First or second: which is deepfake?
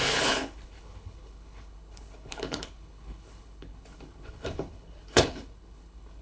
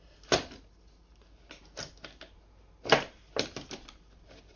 first